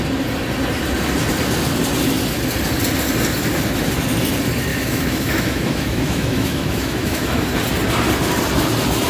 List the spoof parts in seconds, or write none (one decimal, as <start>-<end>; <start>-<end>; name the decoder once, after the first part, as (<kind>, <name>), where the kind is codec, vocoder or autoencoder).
4.7-7.5 (autoencoder, DAC-VAE)